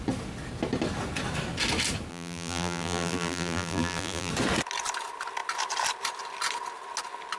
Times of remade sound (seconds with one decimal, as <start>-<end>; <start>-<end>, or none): 2.1-4.3